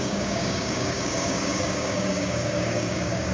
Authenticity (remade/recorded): remade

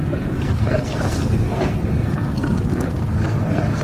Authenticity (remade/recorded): remade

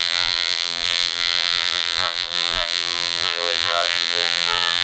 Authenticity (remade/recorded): remade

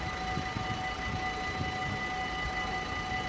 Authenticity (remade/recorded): recorded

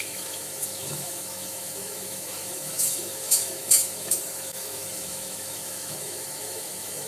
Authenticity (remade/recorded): remade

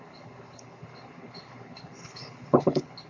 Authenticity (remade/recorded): remade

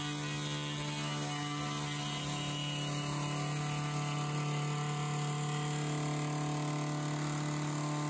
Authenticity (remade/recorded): recorded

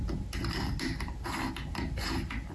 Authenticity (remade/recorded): recorded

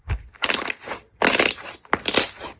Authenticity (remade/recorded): recorded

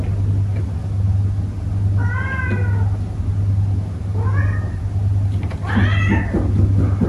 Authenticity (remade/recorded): recorded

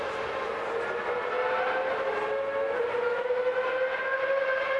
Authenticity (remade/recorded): recorded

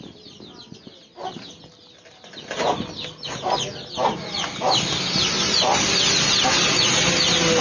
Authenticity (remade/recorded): recorded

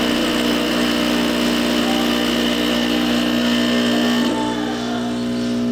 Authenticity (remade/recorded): recorded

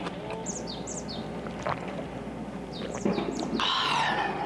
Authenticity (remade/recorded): recorded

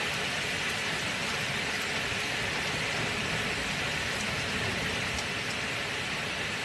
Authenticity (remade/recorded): recorded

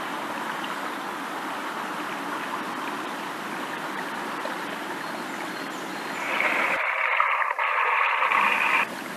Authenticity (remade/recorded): recorded